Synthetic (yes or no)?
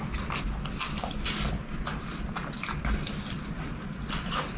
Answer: no